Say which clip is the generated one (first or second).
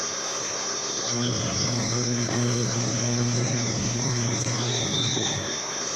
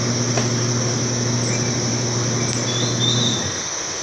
first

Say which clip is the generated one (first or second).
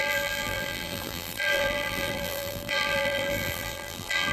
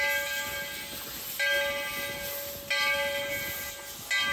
first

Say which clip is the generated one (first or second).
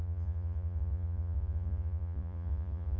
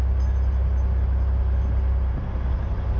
first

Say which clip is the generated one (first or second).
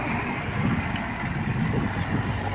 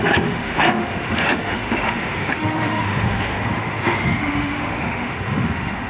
second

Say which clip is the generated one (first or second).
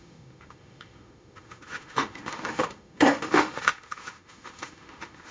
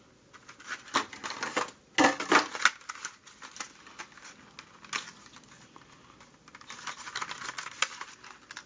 first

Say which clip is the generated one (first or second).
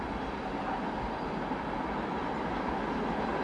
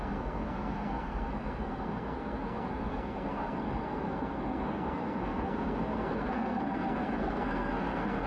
second